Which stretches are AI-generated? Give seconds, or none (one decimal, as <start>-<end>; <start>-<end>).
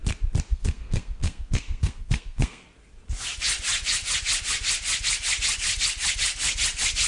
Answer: 0.5-2.6